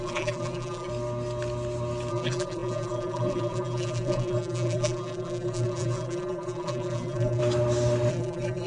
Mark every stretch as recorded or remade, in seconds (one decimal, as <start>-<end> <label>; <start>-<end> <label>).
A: 0.0-0.9 remade; 0.9-2.1 recorded; 2.1-7.4 remade; 7.4-8.1 recorded; 8.1-8.7 remade